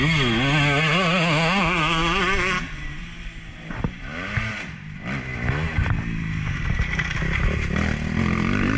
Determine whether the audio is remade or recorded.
recorded